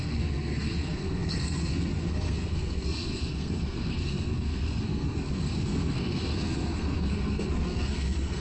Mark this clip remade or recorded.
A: remade